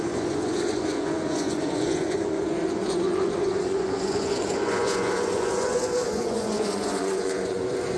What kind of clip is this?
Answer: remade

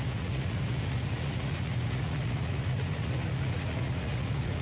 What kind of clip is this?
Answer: remade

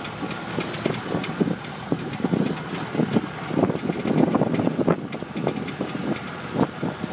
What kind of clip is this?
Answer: recorded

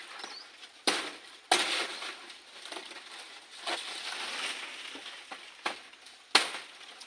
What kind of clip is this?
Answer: recorded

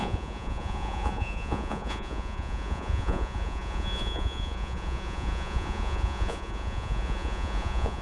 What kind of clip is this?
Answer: remade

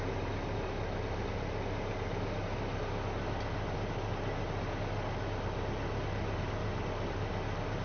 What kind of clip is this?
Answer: recorded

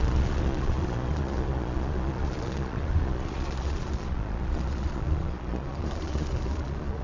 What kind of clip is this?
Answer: remade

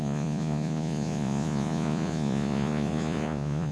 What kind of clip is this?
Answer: remade